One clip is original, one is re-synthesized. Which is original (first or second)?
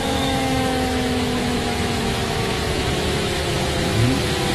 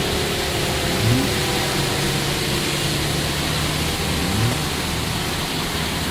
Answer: second